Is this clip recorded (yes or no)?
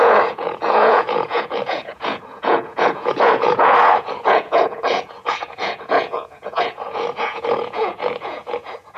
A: no